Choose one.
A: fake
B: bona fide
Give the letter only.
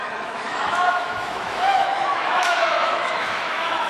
A